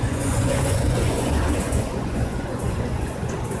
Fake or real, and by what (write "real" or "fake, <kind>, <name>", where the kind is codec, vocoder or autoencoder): fake, vocoder, Vocos